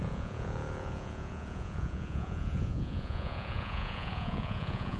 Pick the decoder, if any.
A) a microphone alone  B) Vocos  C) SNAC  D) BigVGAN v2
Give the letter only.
B